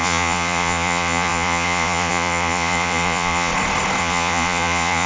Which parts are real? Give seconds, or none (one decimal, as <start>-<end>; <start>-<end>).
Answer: 3.5-4.0